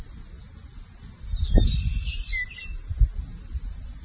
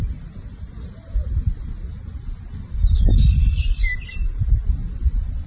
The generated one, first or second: second